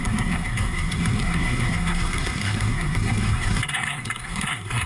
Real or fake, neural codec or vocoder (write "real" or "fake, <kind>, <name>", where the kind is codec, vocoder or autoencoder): fake, codec, SNAC